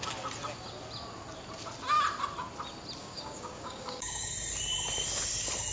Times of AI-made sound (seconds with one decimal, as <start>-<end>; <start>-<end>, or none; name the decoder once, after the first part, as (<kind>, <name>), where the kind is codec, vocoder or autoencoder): 3.0-4.3 (codec, DAC)